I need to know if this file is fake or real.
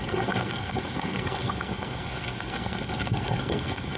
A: fake